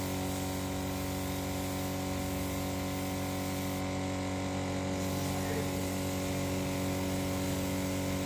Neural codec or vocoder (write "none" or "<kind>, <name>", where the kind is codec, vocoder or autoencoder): none